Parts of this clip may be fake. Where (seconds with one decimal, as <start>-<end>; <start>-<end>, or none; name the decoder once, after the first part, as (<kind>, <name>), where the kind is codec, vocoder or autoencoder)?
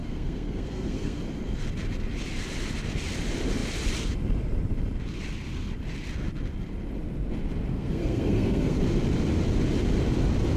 0.0-1.2 (codec, SNAC); 7.7-8.8